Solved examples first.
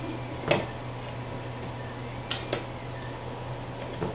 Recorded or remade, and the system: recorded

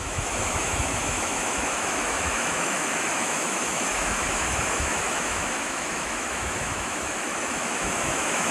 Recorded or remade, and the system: remade, autoencoder, DAC-VAE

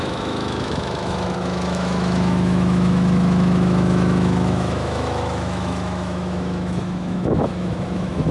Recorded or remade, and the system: remade, autoencoder, DAC-VAE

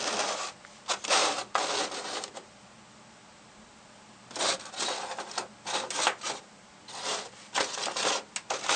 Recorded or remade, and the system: recorded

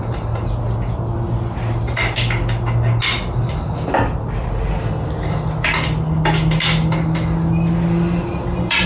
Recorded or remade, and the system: recorded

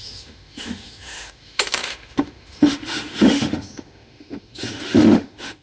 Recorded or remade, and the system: remade, autoencoder, DAC-VAE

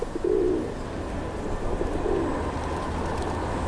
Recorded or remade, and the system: recorded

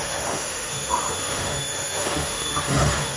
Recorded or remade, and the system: remade, autoencoder, DAC-VAE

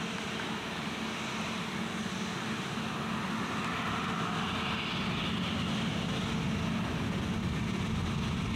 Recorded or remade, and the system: recorded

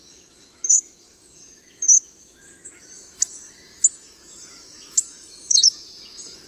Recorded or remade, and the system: remade, autoencoder, DAC-VAE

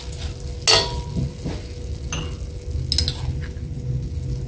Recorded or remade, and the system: recorded